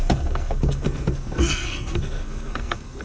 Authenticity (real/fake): fake